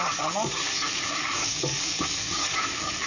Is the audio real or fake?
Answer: fake